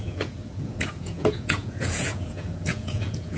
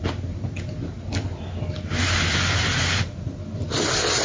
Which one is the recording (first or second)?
second